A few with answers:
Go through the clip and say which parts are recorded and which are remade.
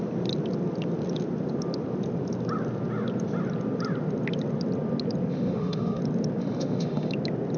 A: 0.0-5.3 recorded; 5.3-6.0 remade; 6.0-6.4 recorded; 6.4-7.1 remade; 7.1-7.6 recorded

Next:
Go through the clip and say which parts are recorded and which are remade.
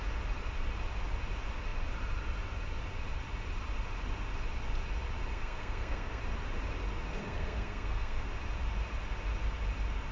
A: 0.0-5.3 recorded; 5.3-6.2 remade; 6.2-7.2 recorded; 7.2-8.3 remade; 8.3-10.1 recorded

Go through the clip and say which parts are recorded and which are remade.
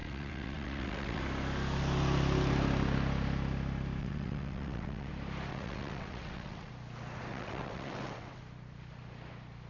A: 0.0-1.2 remade; 1.2-4.0 recorded; 4.0-5.1 remade; 5.1-5.5 recorded; 5.5-6.7 remade; 6.7-7.3 recorded; 7.3-8.4 remade; 8.4-9.7 recorded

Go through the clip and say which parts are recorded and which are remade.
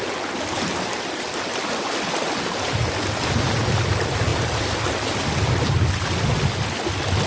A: 0.0-7.3 recorded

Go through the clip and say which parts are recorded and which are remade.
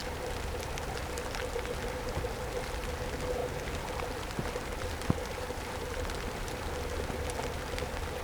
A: 0.0-1.4 remade; 1.4-3.4 recorded; 3.4-6.7 remade; 6.7-8.2 recorded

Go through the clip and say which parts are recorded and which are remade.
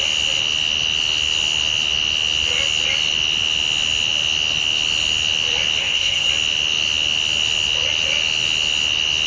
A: 0.0-5.8 recorded; 5.8-6.3 remade; 6.3-9.3 recorded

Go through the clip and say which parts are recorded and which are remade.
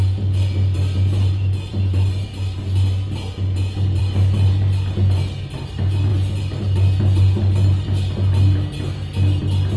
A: 0.0-9.8 recorded